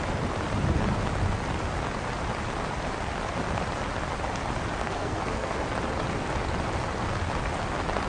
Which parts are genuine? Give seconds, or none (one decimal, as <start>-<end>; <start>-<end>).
0.0-4.8; 5.6-8.1